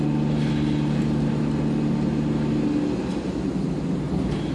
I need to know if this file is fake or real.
real